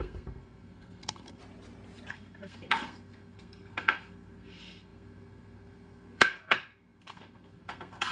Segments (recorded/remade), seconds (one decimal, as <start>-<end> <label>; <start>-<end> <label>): 0.0-1.4 remade; 1.4-2.1 recorded; 2.1-8.1 remade